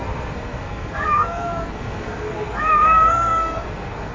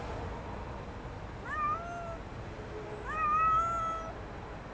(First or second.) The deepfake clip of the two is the first